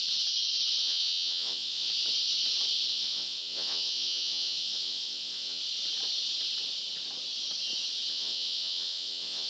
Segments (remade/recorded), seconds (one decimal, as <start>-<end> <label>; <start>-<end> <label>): 0.0-0.8 recorded; 0.8-1.9 remade; 1.9-2.9 recorded; 2.9-5.6 remade; 5.6-8.1 recorded; 8.1-9.5 remade